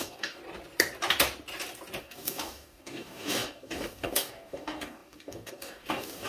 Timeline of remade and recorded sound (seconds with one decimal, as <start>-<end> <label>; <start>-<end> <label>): 0.0-0.4 remade; 0.4-2.0 recorded; 2.0-6.3 remade